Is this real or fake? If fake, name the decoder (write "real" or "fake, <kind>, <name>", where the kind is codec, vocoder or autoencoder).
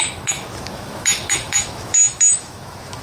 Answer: fake, autoencoder, DAC-VAE